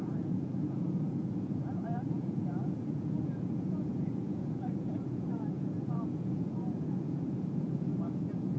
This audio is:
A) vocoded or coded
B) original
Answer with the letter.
A